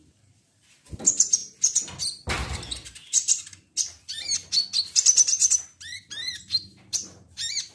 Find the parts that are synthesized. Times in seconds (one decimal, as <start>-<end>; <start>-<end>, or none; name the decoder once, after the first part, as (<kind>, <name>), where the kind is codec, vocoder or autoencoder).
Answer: 0.0-1.4 (vocoder, BigVGAN v2); 4.8-7.7